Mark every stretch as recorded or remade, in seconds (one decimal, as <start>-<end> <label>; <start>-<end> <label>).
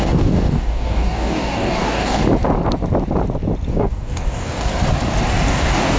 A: 0.0-2.2 remade; 2.2-3.7 recorded; 3.7-4.7 remade; 4.7-5.5 recorded; 5.5-6.0 remade